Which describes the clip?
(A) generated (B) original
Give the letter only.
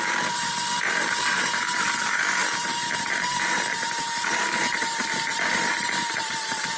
A